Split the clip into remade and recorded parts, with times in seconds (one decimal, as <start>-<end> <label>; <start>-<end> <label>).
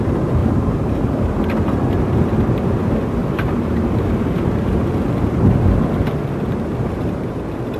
0.0-0.4 recorded; 0.4-1.3 remade; 1.3-3.2 recorded; 3.2-4.4 remade; 4.4-7.8 recorded